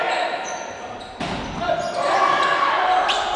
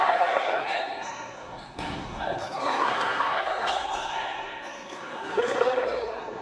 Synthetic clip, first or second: second